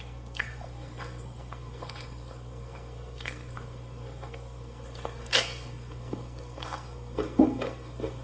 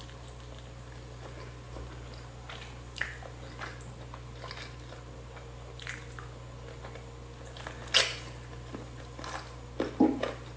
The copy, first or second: first